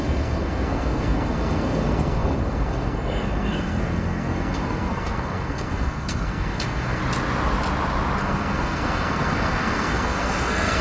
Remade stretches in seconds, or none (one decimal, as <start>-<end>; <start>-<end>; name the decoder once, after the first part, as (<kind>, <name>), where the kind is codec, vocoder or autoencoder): 0.0-7.0 (codec, SNAC); 8.2-10.8